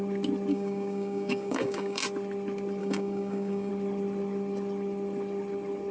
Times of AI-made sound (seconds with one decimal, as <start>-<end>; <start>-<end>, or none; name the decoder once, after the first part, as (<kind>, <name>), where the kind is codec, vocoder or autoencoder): 0.5-2.0 (codec, DAC); 2.8-3.7